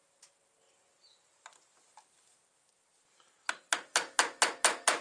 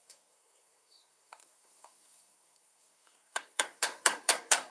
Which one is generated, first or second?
second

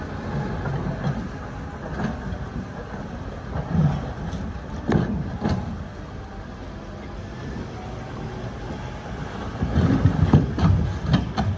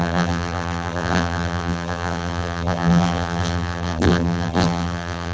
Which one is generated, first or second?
second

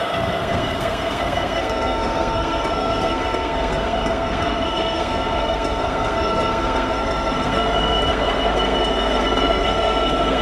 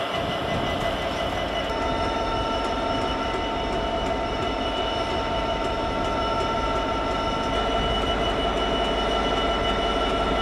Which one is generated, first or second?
first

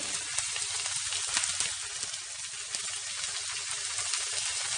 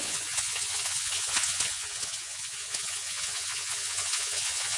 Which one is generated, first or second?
second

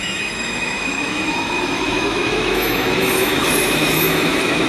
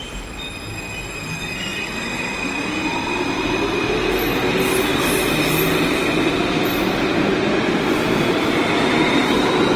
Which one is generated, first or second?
first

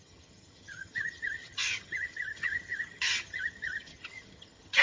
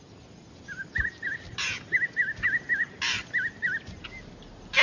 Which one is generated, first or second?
first